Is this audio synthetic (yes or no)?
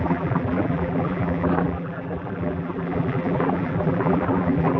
yes